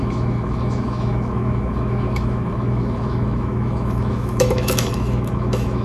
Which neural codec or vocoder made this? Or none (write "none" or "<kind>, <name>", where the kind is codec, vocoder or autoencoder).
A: autoencoder, DAC-VAE